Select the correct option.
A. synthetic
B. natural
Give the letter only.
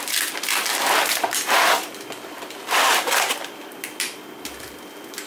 A